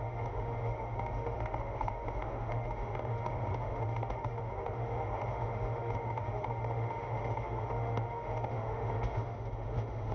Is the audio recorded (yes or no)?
no